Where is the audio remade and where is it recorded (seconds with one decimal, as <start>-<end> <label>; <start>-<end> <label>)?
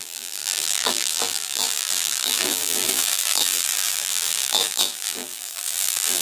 0.0-6.2 remade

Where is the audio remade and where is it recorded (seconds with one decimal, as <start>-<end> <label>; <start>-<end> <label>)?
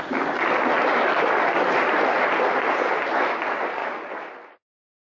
0.0-5.0 recorded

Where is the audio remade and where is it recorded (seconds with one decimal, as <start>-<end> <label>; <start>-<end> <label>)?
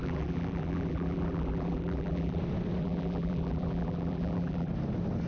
0.0-2.4 remade; 2.4-2.8 recorded; 2.8-4.7 remade; 4.7-5.3 recorded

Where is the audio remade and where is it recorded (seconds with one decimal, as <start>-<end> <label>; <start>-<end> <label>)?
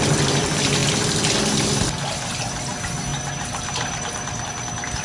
0.0-5.0 recorded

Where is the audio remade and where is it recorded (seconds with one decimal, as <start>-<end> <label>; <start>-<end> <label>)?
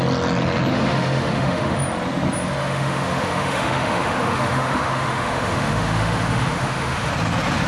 0.0-0.7 recorded; 0.7-1.8 remade; 1.8-2.6 recorded; 2.6-7.1 remade; 7.1-7.7 recorded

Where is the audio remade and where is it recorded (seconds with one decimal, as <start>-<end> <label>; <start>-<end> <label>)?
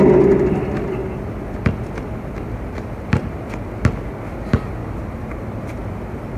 0.0-6.4 recorded